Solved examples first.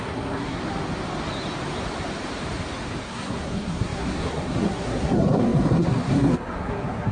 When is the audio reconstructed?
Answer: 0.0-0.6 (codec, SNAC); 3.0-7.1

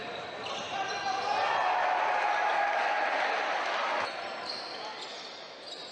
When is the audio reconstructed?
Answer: none

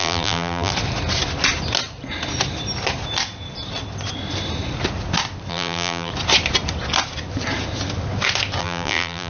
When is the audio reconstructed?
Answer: 0.0-0.7 (vocoder, BigVGAN v2); 5.5-6.1; 8.6-9.3